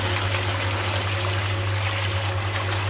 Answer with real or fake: real